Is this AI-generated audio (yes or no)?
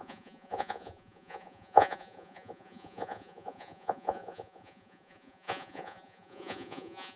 yes